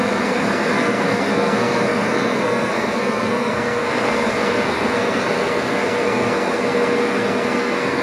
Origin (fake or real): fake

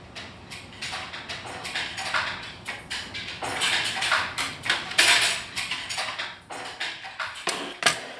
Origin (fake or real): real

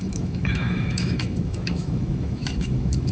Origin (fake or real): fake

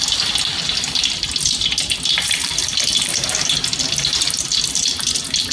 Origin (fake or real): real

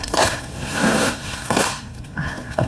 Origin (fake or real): fake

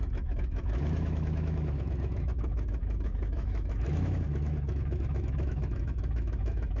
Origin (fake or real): fake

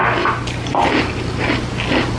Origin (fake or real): real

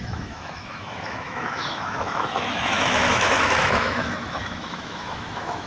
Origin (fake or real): fake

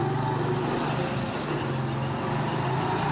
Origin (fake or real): real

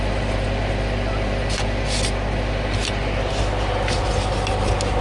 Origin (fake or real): real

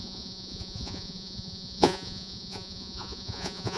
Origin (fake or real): fake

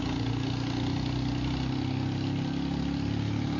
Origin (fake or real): real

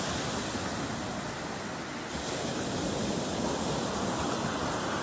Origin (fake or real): real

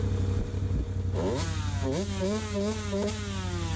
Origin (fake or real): real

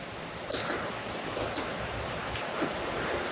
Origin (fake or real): real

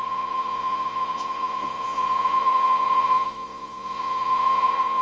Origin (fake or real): fake